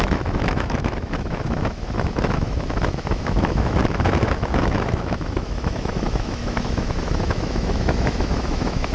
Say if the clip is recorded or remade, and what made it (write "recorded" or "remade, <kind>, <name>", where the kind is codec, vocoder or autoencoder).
remade, autoencoder, DAC-VAE